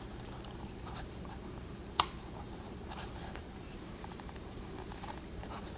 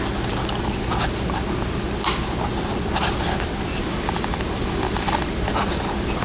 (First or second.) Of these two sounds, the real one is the second